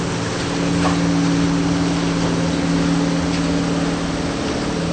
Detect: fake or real real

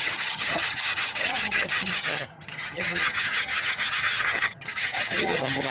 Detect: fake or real fake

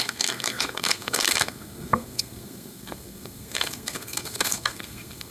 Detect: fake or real fake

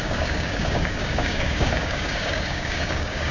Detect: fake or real fake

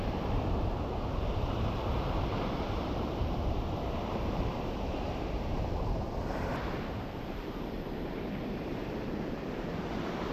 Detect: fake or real fake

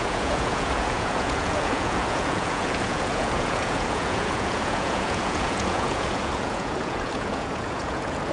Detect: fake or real fake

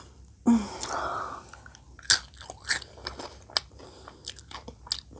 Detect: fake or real real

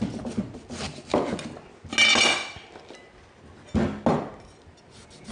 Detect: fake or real real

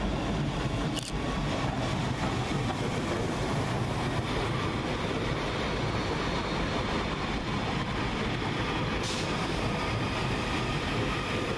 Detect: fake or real real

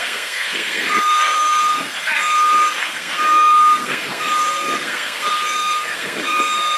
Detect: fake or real fake